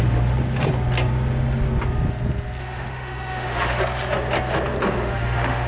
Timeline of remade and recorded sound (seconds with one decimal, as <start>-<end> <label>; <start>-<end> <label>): 0.0-2.6 recorded; 2.6-3.8 remade; 3.8-4.9 recorded; 4.9-5.7 remade